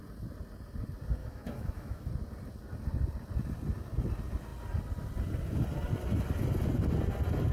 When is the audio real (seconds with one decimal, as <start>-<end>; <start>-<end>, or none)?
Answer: 0.0-1.2; 2.1-7.5